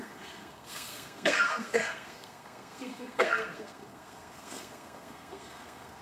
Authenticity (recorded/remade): remade